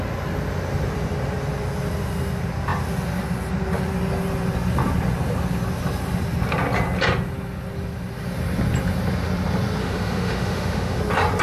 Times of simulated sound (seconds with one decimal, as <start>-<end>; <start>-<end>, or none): 9.8-11.0